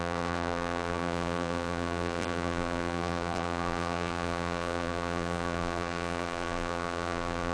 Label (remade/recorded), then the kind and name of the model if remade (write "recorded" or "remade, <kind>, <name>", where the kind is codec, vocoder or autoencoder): remade, vocoder, BigVGAN v2